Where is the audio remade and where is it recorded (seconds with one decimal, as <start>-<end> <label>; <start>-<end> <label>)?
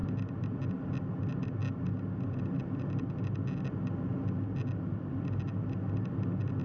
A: 0.0-6.6 recorded